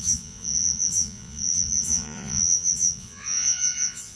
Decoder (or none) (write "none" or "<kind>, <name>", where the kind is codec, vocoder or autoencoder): vocoder, Vocos